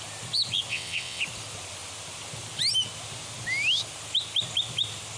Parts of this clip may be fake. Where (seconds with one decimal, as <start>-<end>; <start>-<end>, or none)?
0.7-1.2